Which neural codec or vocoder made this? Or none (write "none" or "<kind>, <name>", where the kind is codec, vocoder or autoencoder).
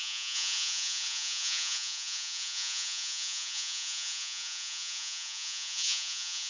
vocoder, Vocos